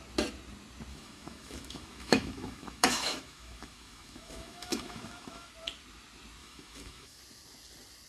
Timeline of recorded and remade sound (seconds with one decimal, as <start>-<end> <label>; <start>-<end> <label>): 0.0-0.9 recorded; 0.9-5.5 remade; 5.5-6.4 recorded; 6.4-7.2 remade; 7.2-8.1 recorded